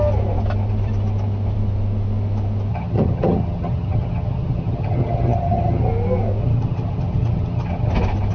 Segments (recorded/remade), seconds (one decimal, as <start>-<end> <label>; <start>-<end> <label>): 0.0-2.7 recorded; 2.7-5.9 remade; 5.9-6.4 recorded; 6.4-7.9 remade; 7.9-8.3 recorded